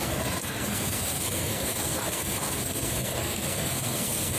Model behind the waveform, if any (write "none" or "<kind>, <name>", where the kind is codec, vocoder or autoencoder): codec, SNAC